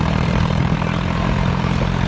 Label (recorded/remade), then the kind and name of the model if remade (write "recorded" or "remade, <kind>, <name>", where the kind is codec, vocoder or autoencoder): remade, vocoder, BigVGAN v2